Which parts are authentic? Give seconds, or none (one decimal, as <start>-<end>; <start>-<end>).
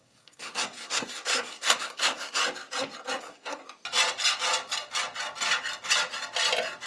2.4-3.2; 3.6-6.9